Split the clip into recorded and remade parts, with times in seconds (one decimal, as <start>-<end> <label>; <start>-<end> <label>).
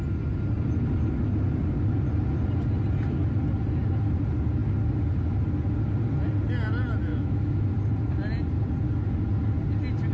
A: 0.0-7.1 recorded; 7.1-7.7 remade; 7.7-10.1 recorded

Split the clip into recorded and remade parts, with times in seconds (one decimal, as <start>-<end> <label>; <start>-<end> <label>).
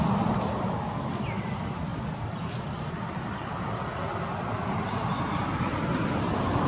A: 0.0-6.7 remade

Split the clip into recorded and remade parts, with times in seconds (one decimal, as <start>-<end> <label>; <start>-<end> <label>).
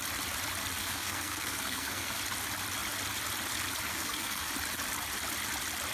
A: 0.0-0.8 recorded; 0.8-2.2 remade; 2.2-3.9 recorded; 3.9-4.5 remade; 4.5-5.9 recorded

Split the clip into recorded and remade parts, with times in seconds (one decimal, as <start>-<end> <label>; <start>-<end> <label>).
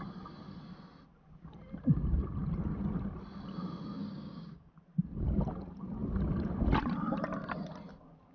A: 0.0-4.0 recorded; 4.0-4.7 remade; 4.7-8.3 recorded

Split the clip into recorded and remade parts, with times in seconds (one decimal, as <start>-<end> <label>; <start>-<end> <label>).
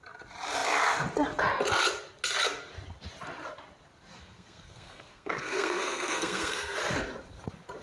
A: 0.0-4.2 recorded; 4.2-6.8 remade; 6.8-7.8 recorded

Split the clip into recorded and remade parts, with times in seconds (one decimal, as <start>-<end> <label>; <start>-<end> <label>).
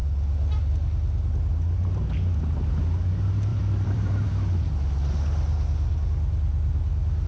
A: 0.0-3.5 recorded; 3.5-4.3 remade; 4.3-7.3 recorded